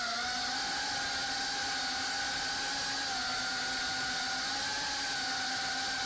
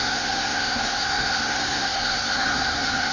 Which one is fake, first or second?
second